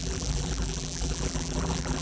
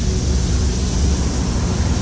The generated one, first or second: first